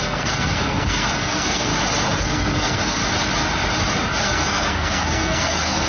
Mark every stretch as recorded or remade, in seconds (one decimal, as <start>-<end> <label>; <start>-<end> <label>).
0.0-1.7 remade; 1.7-2.2 recorded; 2.2-3.0 remade; 3.0-4.2 recorded; 4.2-5.9 remade